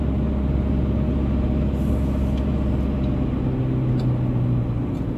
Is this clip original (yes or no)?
yes